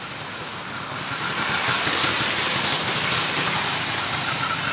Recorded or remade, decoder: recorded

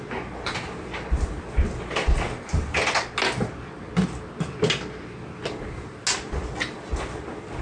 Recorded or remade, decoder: recorded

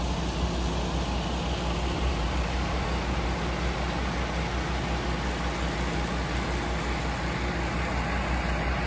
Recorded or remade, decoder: recorded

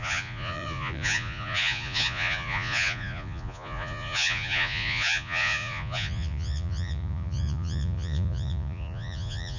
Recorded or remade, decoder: remade, vocoder, Vocos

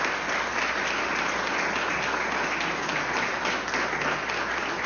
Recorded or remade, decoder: recorded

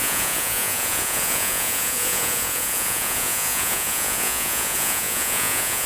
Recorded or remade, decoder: remade, vocoder, Vocos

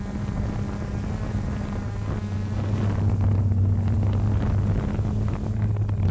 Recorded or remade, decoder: recorded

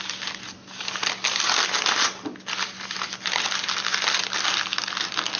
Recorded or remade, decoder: recorded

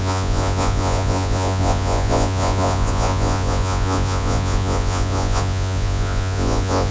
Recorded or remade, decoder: remade, vocoder, Vocos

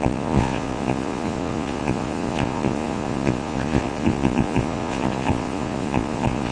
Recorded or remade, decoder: remade, vocoder, Vocos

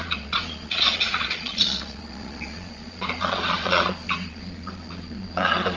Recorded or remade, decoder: remade, vocoder, Vocos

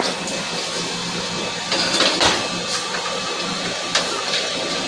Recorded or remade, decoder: recorded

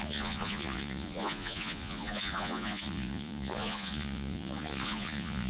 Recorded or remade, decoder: remade, vocoder, Vocos